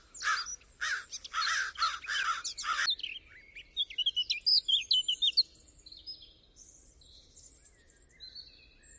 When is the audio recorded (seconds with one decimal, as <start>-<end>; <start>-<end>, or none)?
0.0-9.0